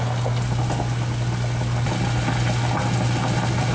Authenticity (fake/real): real